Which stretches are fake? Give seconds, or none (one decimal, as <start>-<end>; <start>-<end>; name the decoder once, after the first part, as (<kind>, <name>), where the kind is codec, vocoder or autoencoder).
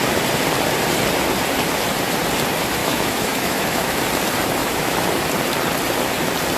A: 2.8-4.0 (autoencoder, DAC-VAE); 4.6-5.2